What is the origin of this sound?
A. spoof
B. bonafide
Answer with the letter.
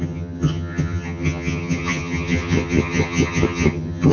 A